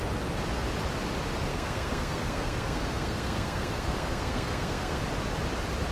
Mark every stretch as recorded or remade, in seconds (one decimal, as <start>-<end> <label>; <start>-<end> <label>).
0.0-1.5 recorded; 1.5-5.0 remade; 5.0-5.9 recorded